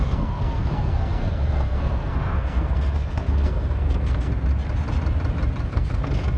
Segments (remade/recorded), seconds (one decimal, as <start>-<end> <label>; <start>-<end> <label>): 0.0-4.3 remade; 4.3-5.6 recorded; 5.6-6.4 remade